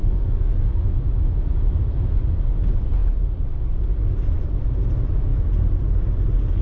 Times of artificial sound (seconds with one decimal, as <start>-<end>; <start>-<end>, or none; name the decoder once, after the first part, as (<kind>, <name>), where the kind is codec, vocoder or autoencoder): 0.0-0.8 (codec, DAC)